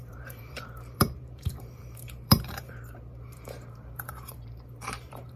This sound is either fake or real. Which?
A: fake